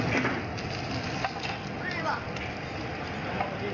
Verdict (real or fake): real